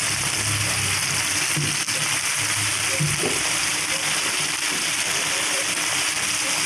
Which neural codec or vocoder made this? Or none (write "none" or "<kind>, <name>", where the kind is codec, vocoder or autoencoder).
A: none